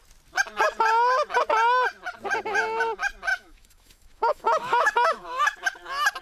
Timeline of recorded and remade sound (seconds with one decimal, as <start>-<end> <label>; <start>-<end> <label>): 0.0-3.3 recorded; 3.3-5.4 remade; 5.4-6.2 recorded